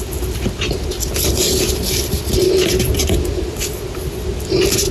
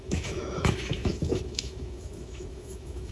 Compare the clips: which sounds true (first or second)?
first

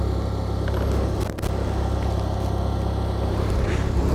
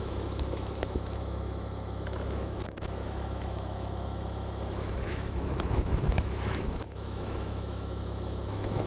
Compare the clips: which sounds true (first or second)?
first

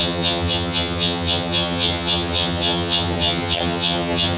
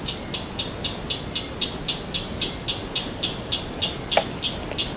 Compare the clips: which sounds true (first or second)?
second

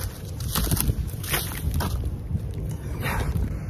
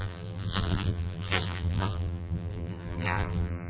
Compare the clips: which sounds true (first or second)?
first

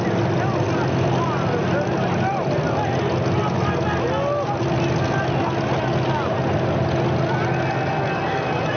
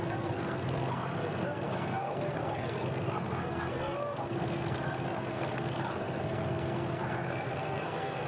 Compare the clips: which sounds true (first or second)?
first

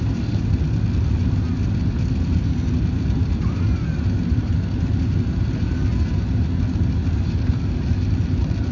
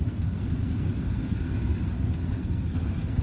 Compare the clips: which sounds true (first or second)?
first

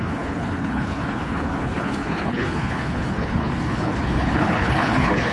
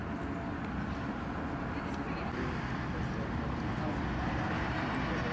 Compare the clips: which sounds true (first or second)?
second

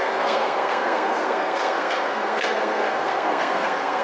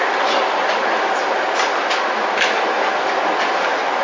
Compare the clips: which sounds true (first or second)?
second